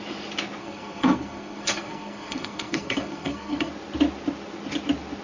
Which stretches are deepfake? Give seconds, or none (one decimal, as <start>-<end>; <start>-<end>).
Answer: 0.6-3.7